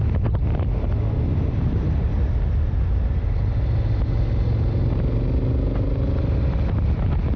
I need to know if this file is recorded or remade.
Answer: recorded